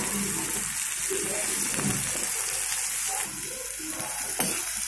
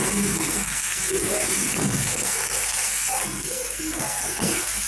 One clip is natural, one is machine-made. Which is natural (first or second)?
first